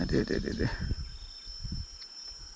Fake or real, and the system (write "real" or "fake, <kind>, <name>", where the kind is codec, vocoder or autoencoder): real